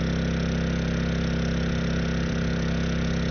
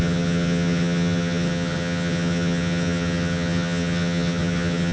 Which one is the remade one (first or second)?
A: second